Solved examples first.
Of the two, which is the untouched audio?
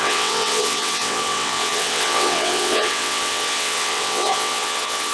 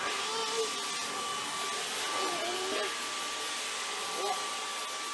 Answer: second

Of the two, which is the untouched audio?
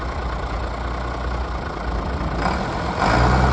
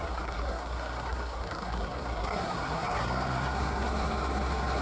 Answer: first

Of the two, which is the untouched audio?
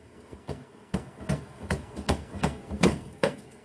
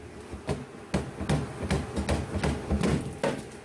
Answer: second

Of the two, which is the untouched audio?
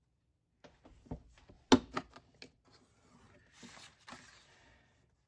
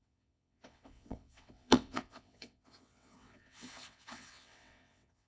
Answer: first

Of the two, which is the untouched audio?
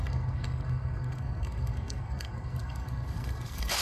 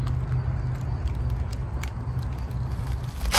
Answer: second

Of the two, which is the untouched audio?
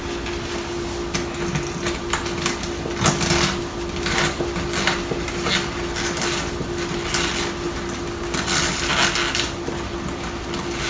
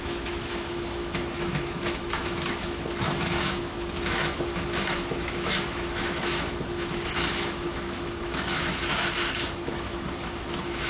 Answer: first